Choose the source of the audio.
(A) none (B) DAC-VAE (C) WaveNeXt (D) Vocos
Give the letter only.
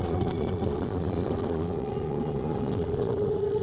D